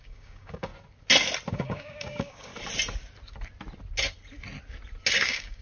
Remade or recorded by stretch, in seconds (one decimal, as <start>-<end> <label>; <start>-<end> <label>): 0.0-0.7 remade; 0.7-1.5 recorded; 1.5-2.5 remade; 2.5-5.1 recorded; 5.1-5.6 remade